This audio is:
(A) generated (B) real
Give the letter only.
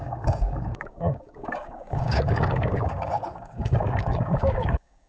A